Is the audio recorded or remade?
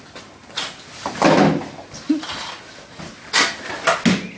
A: recorded